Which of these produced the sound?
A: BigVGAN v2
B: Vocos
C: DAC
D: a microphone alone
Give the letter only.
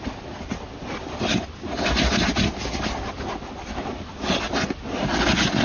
D